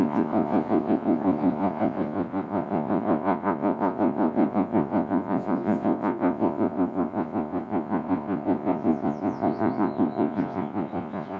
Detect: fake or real fake